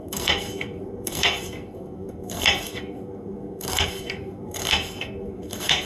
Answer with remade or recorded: remade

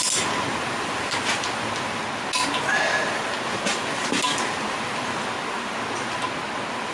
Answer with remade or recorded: recorded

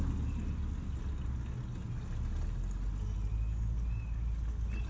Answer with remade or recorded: recorded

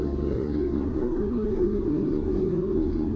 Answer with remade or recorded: remade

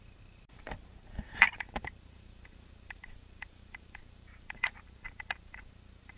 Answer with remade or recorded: remade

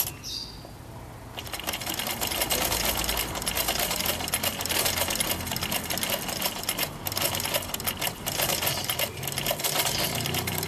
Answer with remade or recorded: recorded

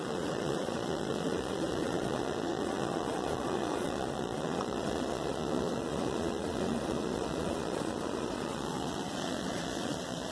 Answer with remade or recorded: remade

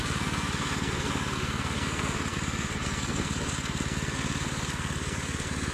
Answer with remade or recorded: remade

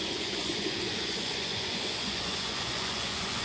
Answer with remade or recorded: remade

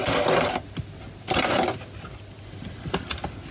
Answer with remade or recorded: recorded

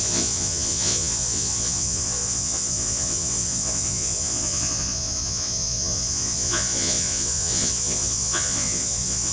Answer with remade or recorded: remade